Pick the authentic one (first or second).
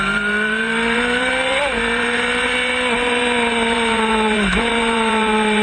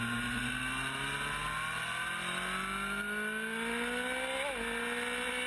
second